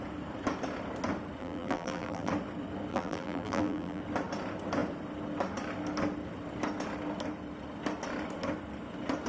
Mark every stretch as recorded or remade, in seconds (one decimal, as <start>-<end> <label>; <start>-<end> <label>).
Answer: 0.0-1.4 recorded; 1.4-2.3 remade; 2.3-2.9 recorded; 2.9-4.0 remade; 4.0-9.3 recorded